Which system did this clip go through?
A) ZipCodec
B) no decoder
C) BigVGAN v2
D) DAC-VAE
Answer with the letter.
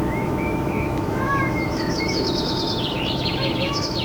D